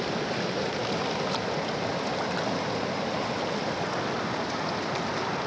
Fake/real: real